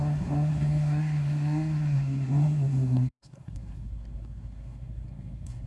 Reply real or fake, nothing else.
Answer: fake